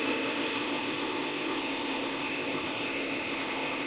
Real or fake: fake